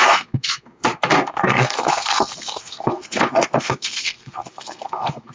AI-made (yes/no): yes